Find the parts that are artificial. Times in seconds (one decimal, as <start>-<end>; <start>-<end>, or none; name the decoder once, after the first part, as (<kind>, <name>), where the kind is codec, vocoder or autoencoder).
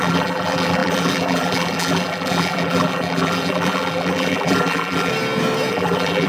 0.0-5.1 (vocoder, BigVGAN v2); 5.7-6.3